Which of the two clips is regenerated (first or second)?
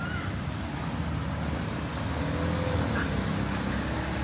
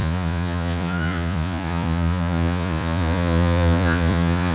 second